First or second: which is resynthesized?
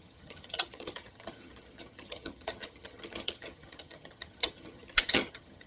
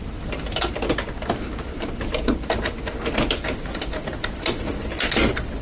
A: first